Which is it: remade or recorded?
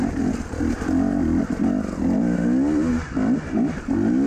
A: recorded